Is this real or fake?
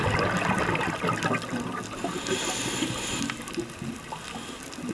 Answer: real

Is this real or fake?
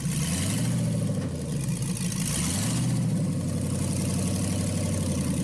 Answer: real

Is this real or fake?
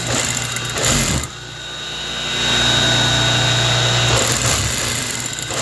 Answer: real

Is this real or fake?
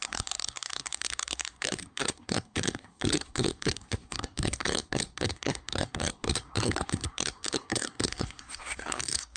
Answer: fake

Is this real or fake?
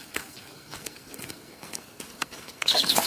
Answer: fake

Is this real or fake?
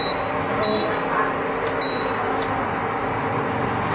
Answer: real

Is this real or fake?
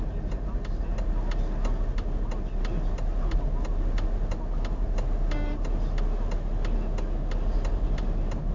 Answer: real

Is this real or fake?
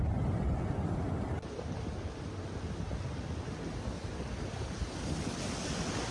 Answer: real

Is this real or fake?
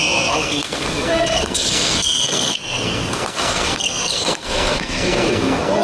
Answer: fake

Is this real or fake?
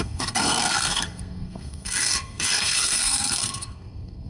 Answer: fake